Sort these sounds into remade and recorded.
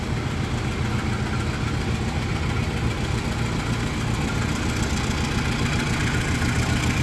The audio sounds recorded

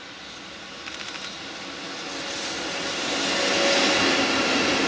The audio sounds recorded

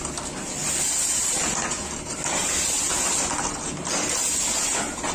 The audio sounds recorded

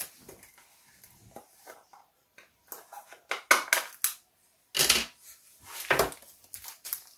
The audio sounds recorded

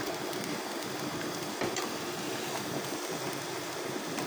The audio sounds recorded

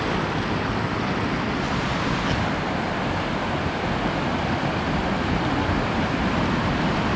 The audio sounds recorded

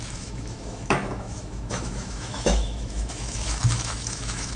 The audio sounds remade